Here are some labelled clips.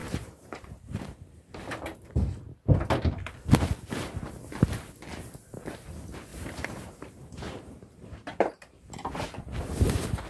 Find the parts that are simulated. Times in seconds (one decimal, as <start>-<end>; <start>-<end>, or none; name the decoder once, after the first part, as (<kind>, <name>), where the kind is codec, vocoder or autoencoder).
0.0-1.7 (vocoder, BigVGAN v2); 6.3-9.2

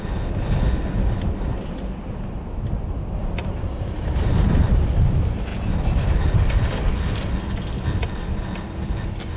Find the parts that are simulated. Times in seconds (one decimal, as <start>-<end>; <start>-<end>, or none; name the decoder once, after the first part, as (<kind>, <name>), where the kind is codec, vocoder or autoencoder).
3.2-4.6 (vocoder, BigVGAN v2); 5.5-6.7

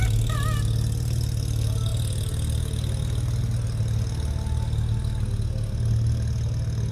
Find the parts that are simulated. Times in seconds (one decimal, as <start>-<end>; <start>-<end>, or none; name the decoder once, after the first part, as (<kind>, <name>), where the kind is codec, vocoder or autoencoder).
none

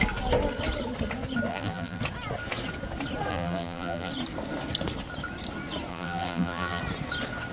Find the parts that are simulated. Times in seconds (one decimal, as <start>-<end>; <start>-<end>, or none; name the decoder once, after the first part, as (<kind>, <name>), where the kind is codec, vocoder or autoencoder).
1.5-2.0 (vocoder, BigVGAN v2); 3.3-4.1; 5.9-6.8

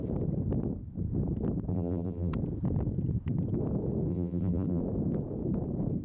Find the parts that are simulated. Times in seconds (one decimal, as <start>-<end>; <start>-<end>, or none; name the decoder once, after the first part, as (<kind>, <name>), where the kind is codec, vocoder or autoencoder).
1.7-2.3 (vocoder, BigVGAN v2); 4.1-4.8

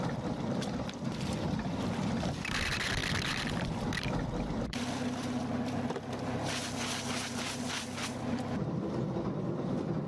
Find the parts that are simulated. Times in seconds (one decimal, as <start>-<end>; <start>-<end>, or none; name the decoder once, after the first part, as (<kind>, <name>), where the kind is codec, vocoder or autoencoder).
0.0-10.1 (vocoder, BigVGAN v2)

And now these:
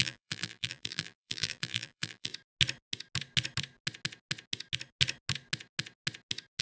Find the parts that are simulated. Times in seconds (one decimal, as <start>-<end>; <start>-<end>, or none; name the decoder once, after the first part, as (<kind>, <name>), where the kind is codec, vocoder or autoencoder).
0.0-2.3 (vocoder, BigVGAN v2)

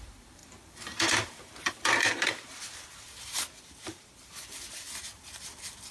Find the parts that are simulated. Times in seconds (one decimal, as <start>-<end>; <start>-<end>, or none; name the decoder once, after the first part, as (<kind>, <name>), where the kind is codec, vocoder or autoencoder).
0.0-5.9 (vocoder, BigVGAN v2)